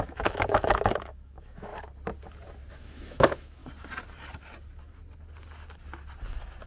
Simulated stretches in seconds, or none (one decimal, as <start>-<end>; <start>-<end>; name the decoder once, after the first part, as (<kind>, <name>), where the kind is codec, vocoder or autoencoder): 0.0-1.7 (autoencoder, DAC-VAE); 2.7-3.6